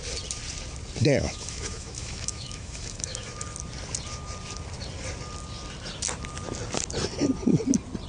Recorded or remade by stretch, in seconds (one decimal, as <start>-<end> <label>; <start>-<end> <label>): 0.0-1.0 recorded; 1.0-3.3 remade; 3.3-8.1 recorded